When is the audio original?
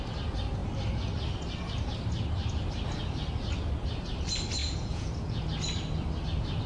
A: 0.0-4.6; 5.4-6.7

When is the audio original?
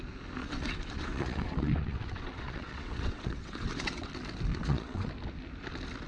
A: 0.0-0.4; 4.1-4.5; 5.1-6.1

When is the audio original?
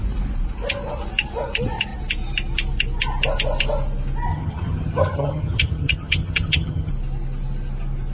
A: 0.0-4.3; 6.9-8.1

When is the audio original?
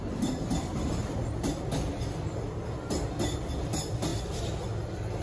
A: 1.7-5.2